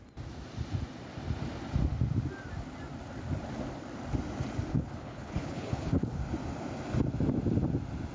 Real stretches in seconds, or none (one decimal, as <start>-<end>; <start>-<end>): 0.0-4.7; 6.2-8.1